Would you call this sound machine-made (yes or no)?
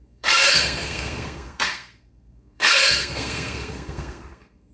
yes